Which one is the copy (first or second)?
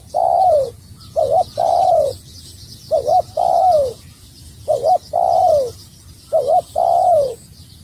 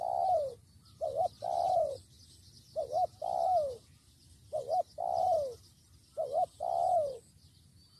first